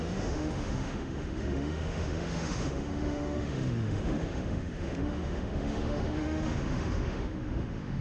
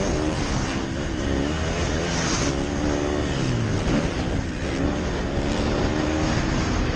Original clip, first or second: second